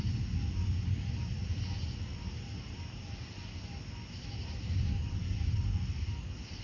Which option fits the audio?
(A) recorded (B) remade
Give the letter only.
A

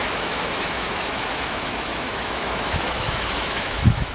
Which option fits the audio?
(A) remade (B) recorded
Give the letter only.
A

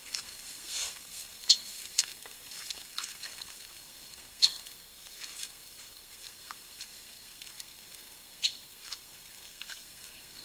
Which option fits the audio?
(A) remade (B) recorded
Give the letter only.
A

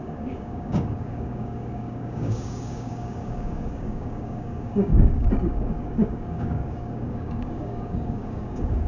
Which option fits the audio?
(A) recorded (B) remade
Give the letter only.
B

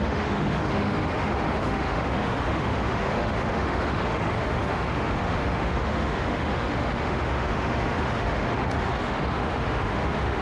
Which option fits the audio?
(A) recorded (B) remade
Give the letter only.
B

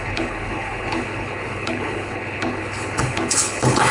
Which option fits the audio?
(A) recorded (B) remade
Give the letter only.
B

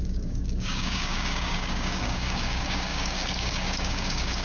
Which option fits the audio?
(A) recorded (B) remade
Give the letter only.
B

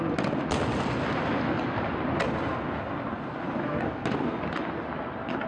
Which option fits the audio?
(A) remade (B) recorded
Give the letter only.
B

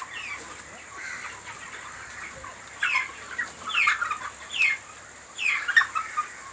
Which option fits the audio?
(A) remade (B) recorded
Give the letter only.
B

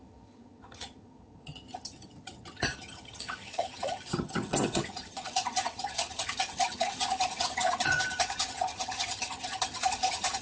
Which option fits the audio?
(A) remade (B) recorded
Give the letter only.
A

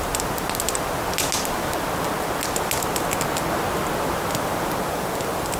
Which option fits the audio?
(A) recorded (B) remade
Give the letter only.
A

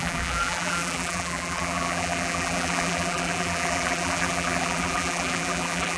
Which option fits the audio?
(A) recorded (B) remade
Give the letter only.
B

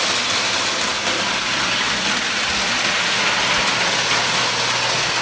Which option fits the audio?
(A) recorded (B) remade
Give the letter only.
A